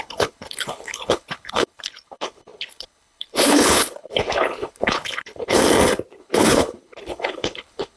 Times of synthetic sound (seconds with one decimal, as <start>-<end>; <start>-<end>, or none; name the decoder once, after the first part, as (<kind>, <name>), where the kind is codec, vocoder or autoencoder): 0.0-5.6 (codec, HILCodec); 6.2-8.0